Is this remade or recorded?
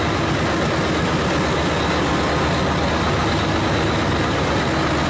recorded